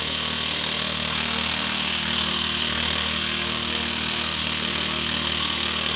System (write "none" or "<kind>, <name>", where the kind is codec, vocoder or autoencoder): codec, SNAC